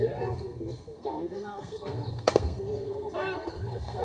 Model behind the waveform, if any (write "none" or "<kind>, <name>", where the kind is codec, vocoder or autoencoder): codec, SNAC